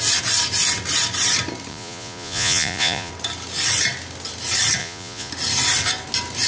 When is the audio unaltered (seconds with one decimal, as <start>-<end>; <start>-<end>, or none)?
0.0-1.7; 3.1-4.8; 5.3-6.5

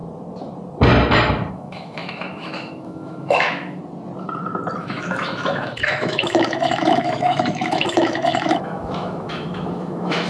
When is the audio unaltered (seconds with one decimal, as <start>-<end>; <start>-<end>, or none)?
0.0-1.5; 3.8-4.8

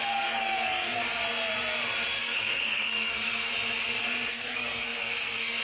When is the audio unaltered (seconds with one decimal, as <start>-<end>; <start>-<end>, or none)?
1.0-2.2; 3.5-4.3

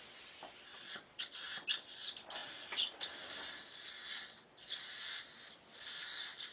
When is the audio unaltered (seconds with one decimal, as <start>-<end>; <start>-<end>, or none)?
0.0-0.7; 1.2-6.5

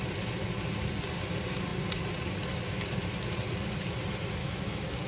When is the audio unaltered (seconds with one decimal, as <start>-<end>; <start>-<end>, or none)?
0.0-4.4

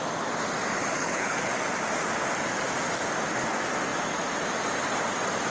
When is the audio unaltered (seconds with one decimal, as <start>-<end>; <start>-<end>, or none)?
0.0-1.0; 1.5-5.5

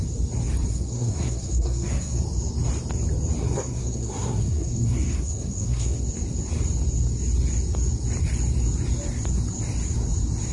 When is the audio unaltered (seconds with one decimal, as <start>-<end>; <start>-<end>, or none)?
0.0-0.7; 2.2-3.4; 6.0-10.5

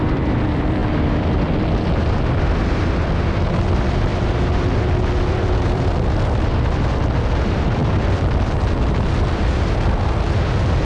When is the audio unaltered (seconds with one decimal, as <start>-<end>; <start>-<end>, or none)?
0.0-10.8